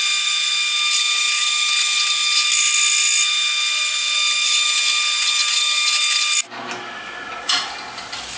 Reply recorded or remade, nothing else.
recorded